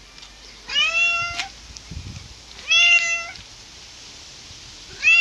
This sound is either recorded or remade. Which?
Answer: recorded